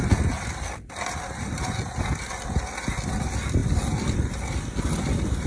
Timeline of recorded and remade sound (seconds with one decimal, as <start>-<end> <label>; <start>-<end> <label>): 0.0-5.5 recorded